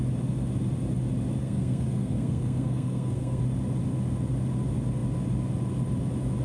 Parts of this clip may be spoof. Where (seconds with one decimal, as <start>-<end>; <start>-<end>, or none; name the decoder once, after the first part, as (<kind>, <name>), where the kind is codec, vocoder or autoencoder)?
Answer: 1.4-3.4 (codec, SNAC)